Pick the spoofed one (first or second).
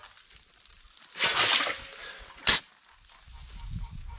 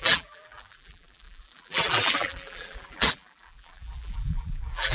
second